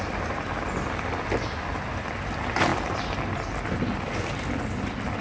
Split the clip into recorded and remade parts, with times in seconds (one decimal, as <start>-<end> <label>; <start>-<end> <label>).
0.0-5.2 recorded